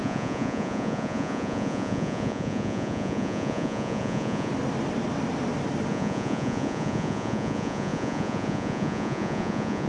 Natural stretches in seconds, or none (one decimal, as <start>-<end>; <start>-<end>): 4.5-5.9